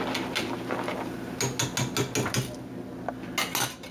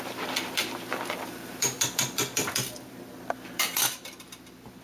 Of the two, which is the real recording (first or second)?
first